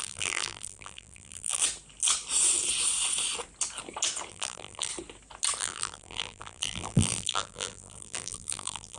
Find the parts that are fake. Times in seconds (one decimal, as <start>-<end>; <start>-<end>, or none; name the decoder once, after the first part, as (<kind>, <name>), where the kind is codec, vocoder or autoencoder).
0.0-1.6 (vocoder, BigVGAN v2); 4.3-4.9; 5.6-9.0